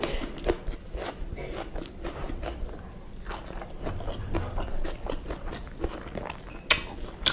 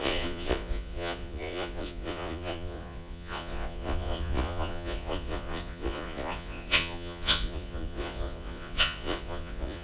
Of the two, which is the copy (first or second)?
second